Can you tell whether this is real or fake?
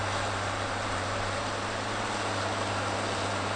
fake